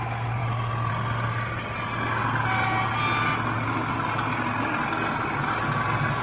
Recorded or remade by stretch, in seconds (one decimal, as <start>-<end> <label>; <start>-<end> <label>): 0.0-6.2 recorded